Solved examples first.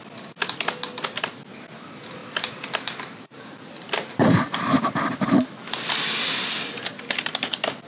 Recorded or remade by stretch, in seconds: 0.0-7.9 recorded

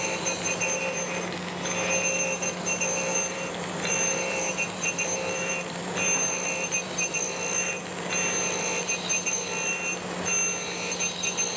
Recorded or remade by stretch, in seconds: 0.0-3.1 recorded; 3.1-7.7 remade; 7.7-11.6 recorded

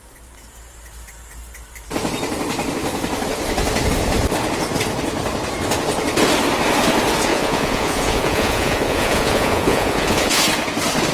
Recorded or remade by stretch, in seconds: 0.0-7.3 recorded; 7.3-10.4 remade; 10.4-11.1 recorded

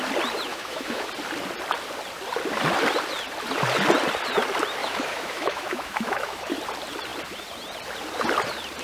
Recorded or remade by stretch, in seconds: 0.0-0.5 recorded; 0.5-1.1 remade; 1.1-4.8 recorded; 4.8-6.5 remade; 6.5-8.8 recorded

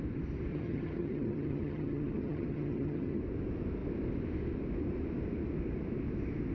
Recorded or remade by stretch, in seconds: 0.0-0.5 recorded; 0.5-3.2 remade; 3.2-6.5 recorded

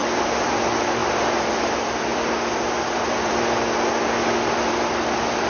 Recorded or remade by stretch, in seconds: 0.0-0.6 remade; 0.6-1.0 recorded; 1.0-1.5 remade; 1.5-2.1 recorded; 2.1-3.3 remade; 3.3-5.5 recorded

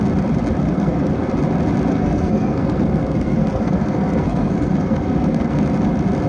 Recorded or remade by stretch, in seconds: 0.0-0.6 recorded; 0.6-1.3 remade; 1.3-1.9 recorded; 1.9-5.6 remade; 5.6-6.3 recorded